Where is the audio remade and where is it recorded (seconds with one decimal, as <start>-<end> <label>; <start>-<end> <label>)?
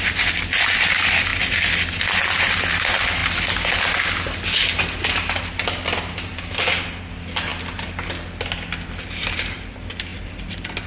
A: 0.0-3.2 remade; 3.2-7.0 recorded; 7.0-7.5 remade; 7.5-8.1 recorded; 8.1-10.9 remade